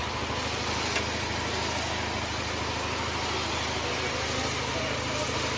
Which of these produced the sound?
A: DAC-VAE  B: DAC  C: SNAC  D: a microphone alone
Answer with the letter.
D